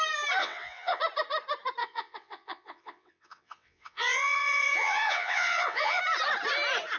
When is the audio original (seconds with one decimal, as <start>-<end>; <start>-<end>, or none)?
0.0-0.4; 1.0-1.8; 6.0-7.0